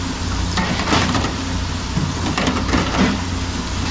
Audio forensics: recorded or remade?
recorded